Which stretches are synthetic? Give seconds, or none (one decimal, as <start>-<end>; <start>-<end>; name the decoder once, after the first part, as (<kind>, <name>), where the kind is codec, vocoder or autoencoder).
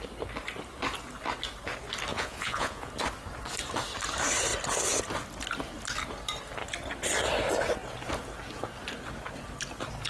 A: 2.1-2.9 (vocoder, Vocos)